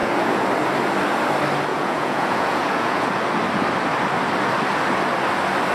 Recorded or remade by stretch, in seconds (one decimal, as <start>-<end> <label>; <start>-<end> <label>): 0.0-0.5 remade; 0.5-1.7 recorded; 1.7-3.2 remade; 3.2-5.7 recorded